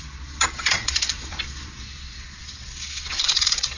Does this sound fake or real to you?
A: fake